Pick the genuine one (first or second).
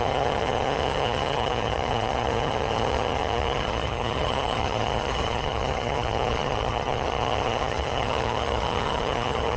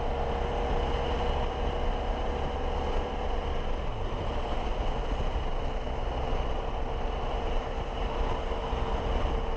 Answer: second